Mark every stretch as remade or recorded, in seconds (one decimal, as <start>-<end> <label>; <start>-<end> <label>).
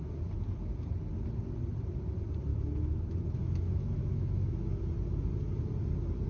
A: 0.0-2.5 recorded; 2.5-4.8 remade; 4.8-6.3 recorded